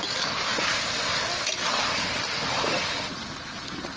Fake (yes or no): no